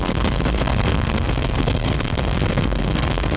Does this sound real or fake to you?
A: fake